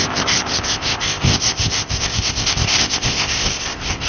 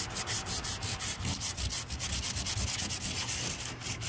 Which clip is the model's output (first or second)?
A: first